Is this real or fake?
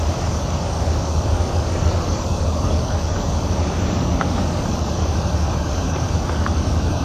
fake